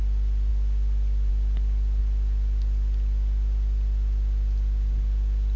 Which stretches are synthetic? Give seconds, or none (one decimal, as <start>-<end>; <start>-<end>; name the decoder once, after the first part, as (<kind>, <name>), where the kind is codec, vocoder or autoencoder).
none